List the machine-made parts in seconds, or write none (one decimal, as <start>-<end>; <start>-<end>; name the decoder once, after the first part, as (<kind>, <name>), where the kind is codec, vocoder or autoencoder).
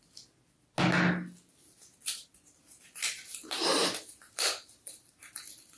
3.3-5.8 (vocoder, BigVGAN v2)